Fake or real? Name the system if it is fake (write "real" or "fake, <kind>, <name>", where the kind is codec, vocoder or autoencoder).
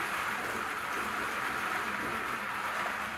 real